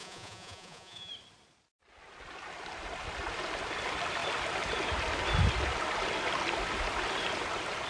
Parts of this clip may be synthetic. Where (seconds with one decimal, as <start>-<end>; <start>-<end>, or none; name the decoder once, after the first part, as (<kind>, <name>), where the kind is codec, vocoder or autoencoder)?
0.0-1.1 (vocoder, Vocos)